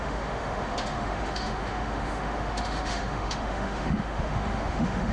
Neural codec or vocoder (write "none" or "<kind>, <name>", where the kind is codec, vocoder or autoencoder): autoencoder, DAC-VAE